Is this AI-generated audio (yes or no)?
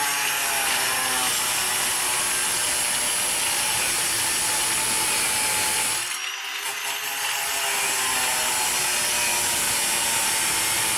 no